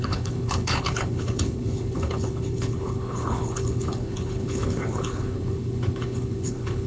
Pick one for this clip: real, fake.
fake